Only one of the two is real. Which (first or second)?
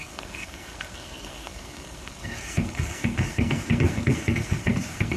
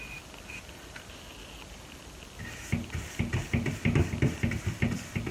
second